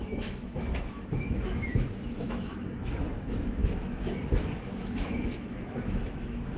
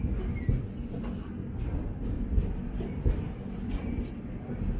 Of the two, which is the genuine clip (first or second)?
second